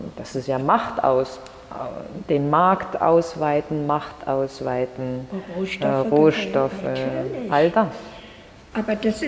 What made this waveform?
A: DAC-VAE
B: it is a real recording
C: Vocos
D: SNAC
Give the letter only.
B